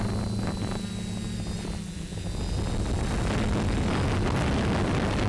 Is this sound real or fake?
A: real